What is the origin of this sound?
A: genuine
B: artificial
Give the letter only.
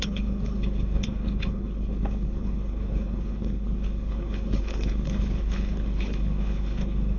B